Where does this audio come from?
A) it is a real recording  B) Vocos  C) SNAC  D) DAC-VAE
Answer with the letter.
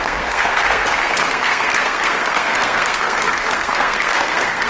C